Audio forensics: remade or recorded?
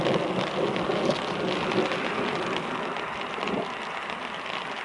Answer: recorded